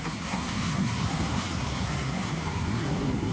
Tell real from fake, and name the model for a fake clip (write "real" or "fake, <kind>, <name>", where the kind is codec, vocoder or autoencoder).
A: fake, codec, SNAC